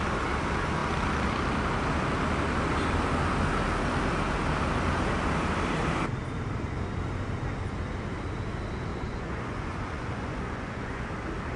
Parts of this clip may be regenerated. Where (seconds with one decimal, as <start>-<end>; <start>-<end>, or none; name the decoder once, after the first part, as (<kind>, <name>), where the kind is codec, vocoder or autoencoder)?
8.9-11.1 (vocoder, Vocos)